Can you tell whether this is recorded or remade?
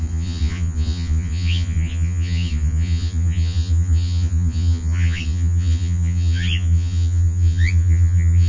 remade